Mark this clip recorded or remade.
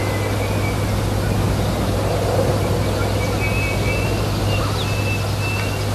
recorded